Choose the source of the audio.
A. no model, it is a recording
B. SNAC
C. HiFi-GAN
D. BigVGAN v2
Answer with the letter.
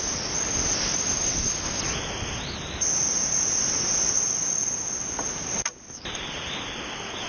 A